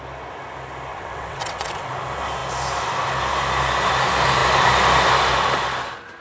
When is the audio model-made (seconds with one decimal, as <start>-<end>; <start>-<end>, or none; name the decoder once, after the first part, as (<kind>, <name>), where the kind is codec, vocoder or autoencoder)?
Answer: 0.9-1.9 (vocoder, WaveNeXt)